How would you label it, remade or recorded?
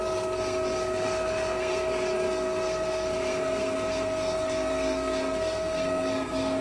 remade